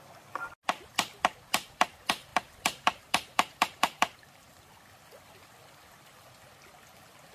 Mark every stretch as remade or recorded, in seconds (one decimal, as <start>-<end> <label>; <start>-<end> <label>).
0.0-2.3 recorded; 2.3-4.5 remade; 4.5-7.3 recorded